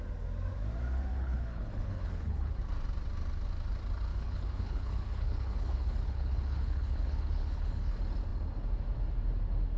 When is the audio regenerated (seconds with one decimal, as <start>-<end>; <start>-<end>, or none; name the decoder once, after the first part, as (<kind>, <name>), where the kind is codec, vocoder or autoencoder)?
1.1-2.5 (codec, HILCodec); 4.1-7.9